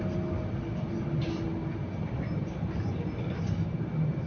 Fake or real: real